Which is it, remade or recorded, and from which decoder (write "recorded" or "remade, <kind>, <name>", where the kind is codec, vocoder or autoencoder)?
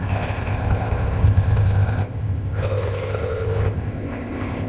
remade, codec, ZipCodec